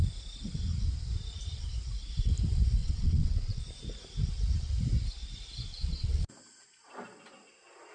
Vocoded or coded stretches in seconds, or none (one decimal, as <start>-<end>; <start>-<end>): 2.8-3.6; 5.7-6.3